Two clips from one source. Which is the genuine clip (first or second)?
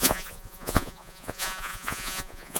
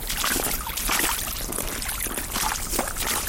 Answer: second